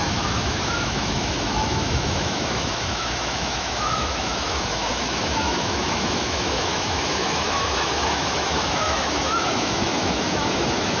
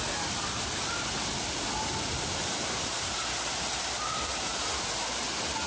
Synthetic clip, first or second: first